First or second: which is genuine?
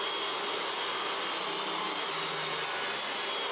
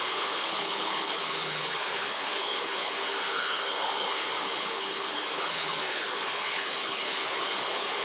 first